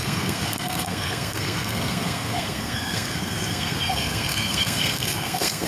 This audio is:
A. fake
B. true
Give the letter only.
A